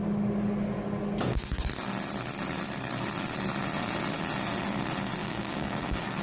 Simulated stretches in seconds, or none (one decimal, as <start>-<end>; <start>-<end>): 5.2-6.2